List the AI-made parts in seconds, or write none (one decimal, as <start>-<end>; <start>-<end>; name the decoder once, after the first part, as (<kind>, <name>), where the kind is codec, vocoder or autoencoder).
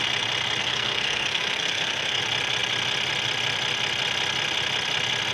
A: 0.6-2.2 (codec, SNAC)